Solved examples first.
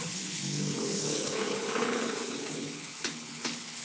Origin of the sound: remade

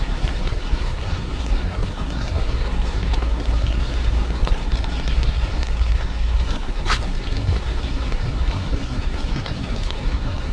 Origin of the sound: remade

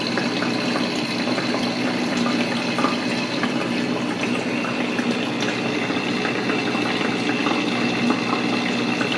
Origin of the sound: recorded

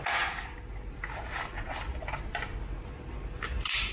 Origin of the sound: recorded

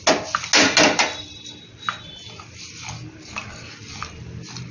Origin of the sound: recorded